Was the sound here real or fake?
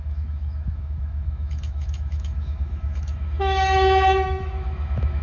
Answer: fake